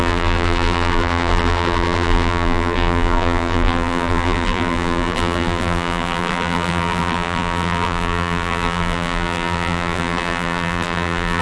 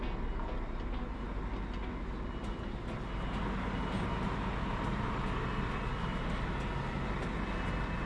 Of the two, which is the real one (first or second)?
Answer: second